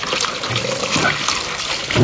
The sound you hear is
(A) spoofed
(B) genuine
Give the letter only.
B